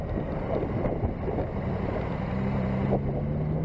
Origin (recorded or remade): recorded